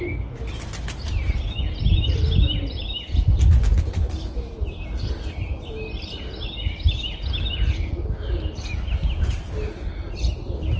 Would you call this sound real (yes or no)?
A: yes